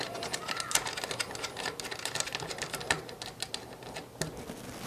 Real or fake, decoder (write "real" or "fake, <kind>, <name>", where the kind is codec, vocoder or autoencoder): real